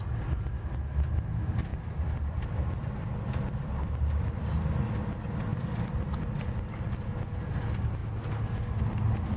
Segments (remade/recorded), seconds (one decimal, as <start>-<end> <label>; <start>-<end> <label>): 0.0-1.7 recorded; 1.7-4.4 remade; 4.4-5.5 recorded; 5.5-6.2 remade; 6.2-9.4 recorded